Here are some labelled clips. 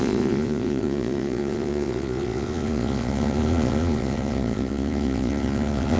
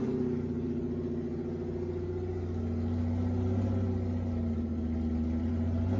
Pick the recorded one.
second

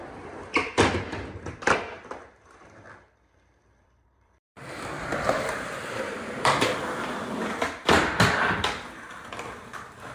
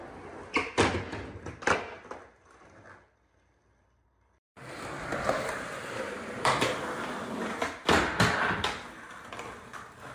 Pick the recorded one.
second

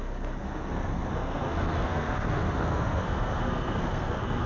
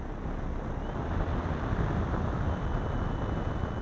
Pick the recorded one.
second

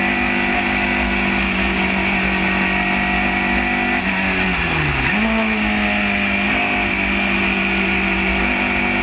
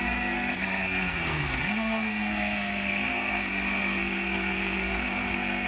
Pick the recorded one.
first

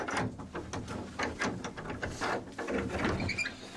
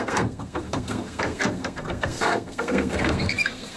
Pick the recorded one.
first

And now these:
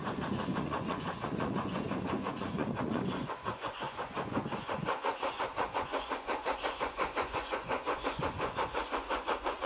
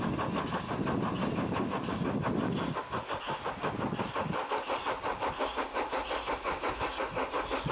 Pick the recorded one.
second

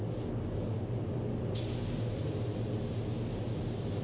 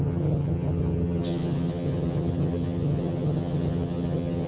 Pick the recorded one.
first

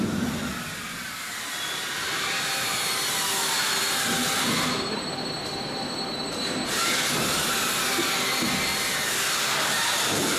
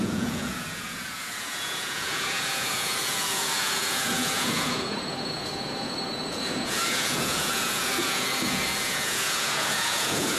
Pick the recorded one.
first